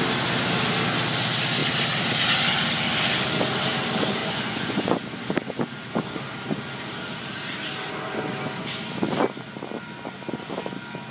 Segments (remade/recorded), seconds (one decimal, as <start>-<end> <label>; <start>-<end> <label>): 0.0-4.2 recorded; 4.2-5.0 remade; 5.0-11.1 recorded